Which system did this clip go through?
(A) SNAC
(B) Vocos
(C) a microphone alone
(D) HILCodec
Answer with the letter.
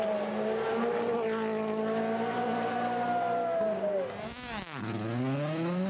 C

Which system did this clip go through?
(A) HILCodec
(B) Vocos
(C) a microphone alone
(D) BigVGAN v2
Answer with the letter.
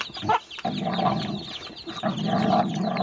C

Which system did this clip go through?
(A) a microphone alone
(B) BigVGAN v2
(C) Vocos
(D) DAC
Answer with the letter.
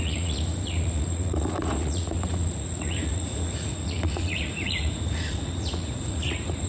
C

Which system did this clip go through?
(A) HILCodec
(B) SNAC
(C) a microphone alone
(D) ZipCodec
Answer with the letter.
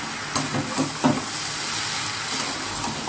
C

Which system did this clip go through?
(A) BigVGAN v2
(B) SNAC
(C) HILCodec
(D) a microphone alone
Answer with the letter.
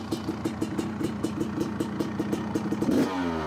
D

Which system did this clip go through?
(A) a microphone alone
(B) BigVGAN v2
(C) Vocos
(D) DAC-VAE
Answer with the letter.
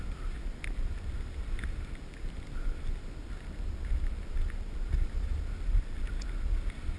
A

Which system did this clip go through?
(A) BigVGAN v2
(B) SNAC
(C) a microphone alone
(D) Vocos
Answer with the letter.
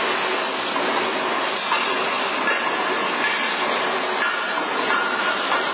C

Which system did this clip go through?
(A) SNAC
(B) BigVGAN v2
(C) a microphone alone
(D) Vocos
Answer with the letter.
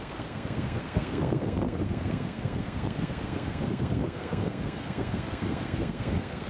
A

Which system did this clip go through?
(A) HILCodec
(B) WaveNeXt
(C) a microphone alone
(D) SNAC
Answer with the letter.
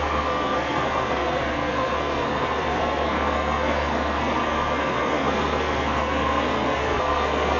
D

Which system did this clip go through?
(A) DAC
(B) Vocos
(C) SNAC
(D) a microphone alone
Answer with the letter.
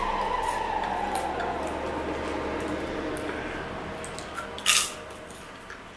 D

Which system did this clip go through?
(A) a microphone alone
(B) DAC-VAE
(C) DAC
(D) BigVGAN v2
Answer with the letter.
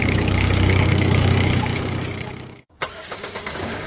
C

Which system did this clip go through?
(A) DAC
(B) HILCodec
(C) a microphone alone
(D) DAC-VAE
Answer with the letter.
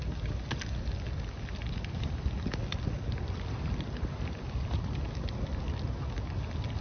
C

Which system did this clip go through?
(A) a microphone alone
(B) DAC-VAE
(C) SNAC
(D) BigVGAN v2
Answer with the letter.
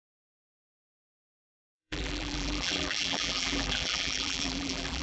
D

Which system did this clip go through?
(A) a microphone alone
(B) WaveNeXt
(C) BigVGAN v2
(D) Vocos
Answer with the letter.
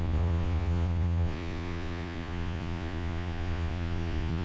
D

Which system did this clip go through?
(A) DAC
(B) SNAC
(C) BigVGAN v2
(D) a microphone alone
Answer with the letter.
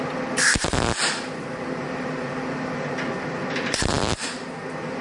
C